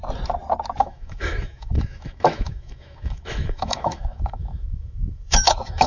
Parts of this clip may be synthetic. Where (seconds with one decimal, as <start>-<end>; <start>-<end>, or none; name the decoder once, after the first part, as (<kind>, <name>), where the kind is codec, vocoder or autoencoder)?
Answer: 0.8-5.9 (autoencoder, DAC-VAE)